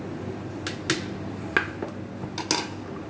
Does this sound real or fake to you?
real